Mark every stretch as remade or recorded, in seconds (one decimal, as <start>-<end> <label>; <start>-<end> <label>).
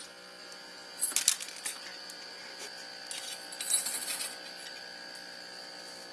0.0-6.1 recorded